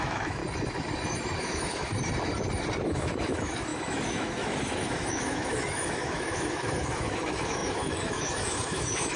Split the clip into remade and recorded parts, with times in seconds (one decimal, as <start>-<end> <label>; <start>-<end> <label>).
0.0-0.4 remade; 0.4-1.4 recorded; 1.4-1.9 remade; 1.9-2.9 recorded; 2.9-9.2 remade